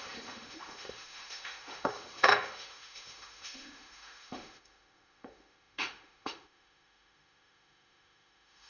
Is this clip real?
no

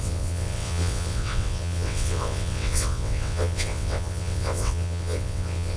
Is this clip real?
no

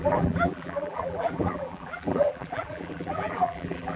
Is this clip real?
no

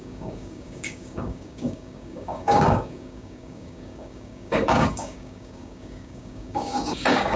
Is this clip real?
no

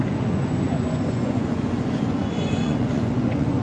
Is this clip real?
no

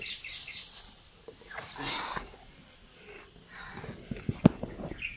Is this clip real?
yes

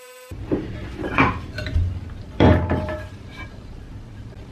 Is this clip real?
no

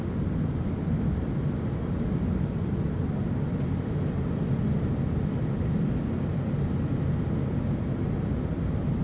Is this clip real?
yes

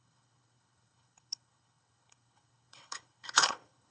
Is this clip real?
no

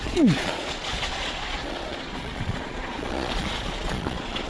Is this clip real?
no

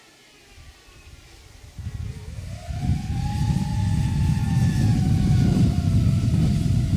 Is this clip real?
yes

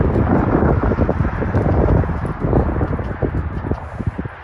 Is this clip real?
yes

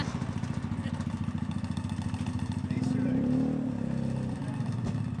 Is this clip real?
yes